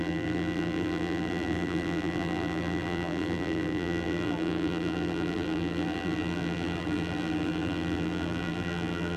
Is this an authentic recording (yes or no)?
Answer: no